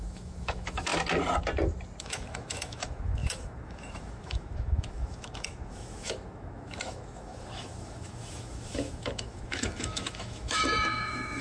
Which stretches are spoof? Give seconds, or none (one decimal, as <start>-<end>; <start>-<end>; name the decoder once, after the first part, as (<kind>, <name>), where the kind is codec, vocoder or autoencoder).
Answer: 0.0-0.9 (autoencoder, DAC-VAE); 2.0-11.4